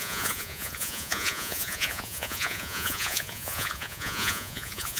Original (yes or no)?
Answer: no